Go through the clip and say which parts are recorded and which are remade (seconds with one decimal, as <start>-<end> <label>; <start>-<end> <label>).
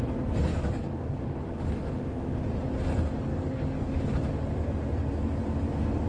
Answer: 0.0-0.5 recorded; 0.5-2.3 remade; 2.3-3.3 recorded; 3.3-4.1 remade; 4.1-6.1 recorded